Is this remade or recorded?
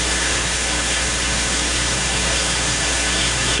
remade